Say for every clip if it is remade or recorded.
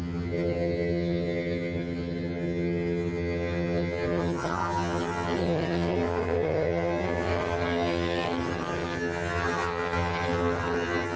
remade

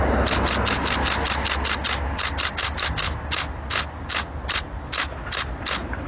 recorded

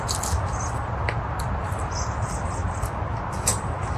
recorded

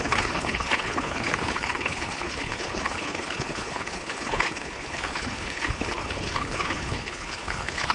remade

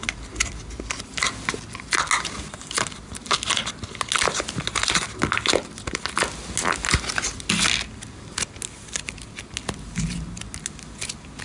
recorded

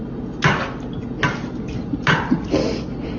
recorded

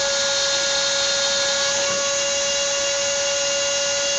recorded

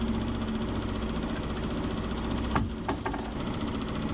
recorded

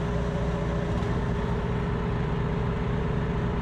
recorded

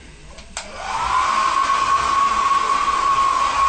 recorded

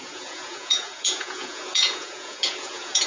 remade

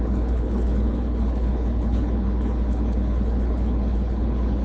remade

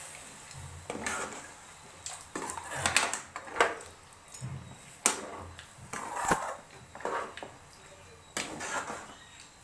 recorded